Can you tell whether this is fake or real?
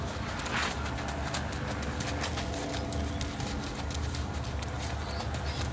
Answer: real